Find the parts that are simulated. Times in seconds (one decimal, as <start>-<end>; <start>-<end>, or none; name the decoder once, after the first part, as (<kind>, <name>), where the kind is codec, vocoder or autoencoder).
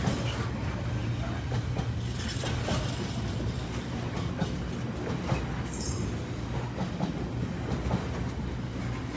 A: none